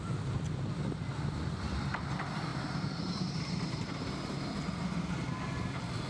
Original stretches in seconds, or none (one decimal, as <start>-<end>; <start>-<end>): 0.0-2.5; 4.4-6.1